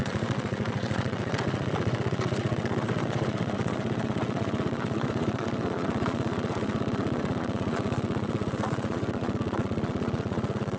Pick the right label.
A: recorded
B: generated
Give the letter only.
B